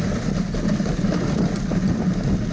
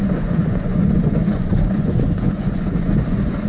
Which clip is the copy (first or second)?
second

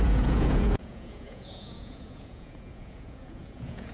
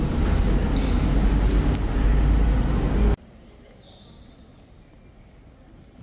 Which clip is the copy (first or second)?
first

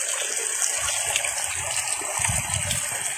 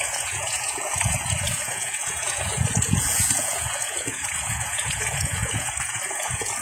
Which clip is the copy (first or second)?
second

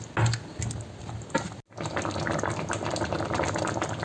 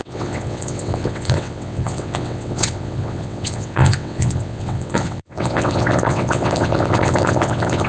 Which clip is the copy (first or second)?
second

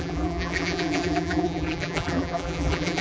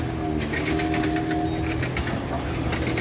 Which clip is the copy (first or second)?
first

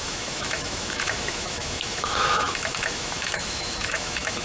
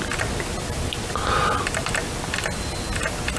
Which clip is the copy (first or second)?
first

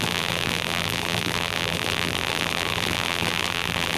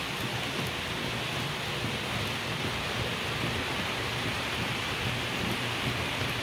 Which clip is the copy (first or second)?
first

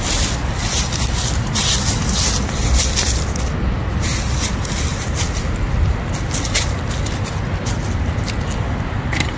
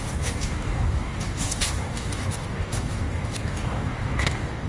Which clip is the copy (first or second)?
second